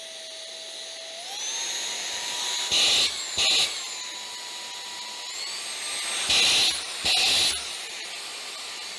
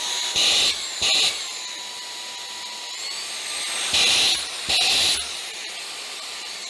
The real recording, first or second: first